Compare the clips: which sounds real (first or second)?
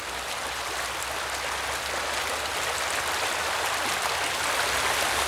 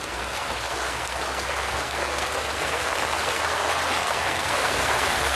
first